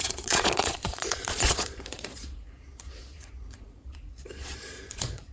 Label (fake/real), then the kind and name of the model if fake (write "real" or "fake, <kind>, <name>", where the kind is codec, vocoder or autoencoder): fake, vocoder, Vocos